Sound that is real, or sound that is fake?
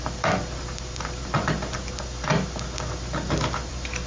fake